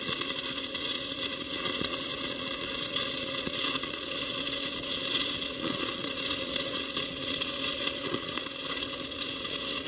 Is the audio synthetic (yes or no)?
yes